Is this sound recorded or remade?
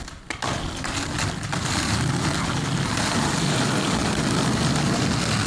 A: recorded